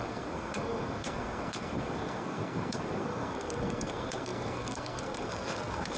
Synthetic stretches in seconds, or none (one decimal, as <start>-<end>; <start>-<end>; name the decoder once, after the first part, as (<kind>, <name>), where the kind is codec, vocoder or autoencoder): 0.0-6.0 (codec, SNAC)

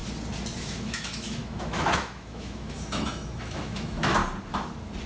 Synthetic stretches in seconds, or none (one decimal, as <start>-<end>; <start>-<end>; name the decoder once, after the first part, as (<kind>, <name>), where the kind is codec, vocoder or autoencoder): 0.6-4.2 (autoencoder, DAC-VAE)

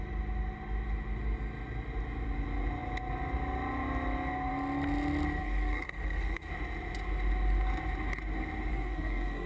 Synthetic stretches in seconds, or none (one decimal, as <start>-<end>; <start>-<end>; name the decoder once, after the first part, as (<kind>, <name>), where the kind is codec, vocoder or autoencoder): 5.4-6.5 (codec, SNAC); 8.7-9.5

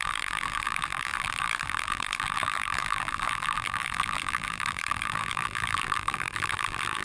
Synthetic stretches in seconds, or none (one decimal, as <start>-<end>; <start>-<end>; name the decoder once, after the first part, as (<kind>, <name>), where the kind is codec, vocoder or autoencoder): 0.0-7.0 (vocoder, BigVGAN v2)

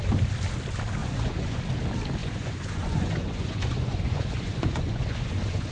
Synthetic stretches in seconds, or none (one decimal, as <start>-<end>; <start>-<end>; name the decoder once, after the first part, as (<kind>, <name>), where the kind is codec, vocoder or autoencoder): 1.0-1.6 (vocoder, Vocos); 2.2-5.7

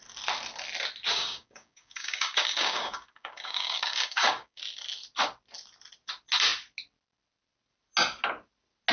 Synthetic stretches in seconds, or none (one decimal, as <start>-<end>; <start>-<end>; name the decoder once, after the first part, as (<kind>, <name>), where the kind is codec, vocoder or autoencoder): 1.1-4.6 (codec, DAC)

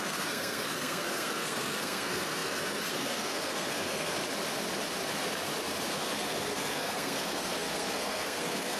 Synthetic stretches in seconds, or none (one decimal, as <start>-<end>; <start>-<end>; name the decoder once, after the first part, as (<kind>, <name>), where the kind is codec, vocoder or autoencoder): 0.0-4.2 (codec, SNAC); 5.9-8.8